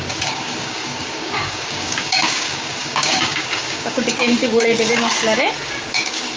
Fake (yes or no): yes